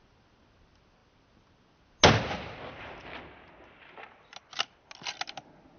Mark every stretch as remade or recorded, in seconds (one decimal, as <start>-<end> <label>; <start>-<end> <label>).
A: 0.0-5.8 recorded